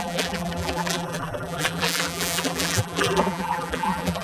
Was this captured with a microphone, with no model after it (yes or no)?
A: no